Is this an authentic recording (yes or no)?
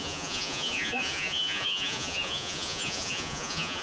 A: no